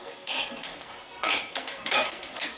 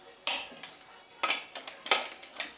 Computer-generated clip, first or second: first